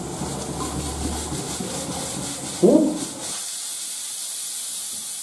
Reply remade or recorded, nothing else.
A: recorded